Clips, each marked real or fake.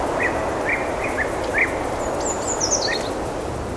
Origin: real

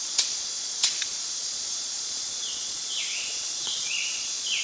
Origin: fake